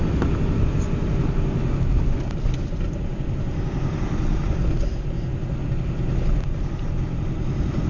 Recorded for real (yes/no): yes